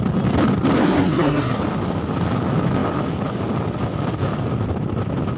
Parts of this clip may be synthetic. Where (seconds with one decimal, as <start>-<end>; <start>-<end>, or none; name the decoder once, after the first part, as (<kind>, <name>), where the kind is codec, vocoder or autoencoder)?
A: 0.8-1.6 (codec, SNAC)